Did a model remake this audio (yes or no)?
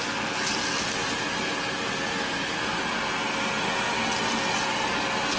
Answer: no